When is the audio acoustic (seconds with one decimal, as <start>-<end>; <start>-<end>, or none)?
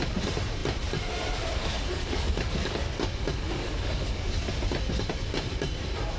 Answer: 0.0-1.6; 4.5-6.2